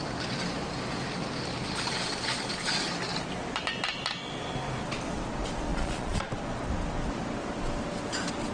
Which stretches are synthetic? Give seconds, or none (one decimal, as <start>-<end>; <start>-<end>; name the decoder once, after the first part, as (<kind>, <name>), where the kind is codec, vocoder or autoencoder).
5.7-6.3 (vocoder, Vocos)